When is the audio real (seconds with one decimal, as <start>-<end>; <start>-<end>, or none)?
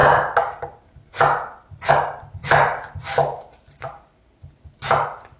0.0-2.4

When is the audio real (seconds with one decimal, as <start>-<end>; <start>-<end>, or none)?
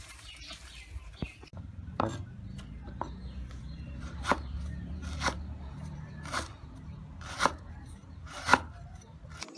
2.1-3.6; 8.5-9.6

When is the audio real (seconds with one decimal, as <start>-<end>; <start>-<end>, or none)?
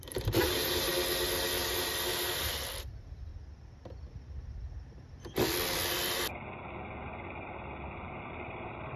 0.9-2.8; 3.3-8.3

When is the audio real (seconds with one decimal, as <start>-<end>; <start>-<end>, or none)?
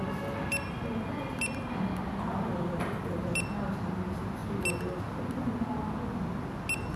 0.0-2.5; 3.0-7.0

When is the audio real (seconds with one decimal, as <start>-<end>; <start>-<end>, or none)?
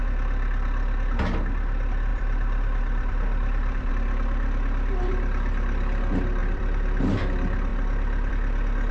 0.0-2.1; 3.9-6.4; 7.2-7.7; 8.3-8.9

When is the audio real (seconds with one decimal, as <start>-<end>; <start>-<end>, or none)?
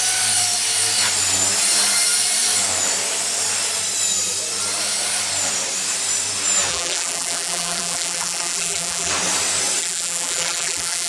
0.0-6.7; 9.1-9.8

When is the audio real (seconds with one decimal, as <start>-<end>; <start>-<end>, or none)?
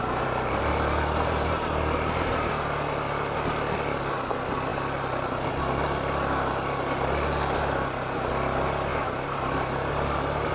2.5-8.9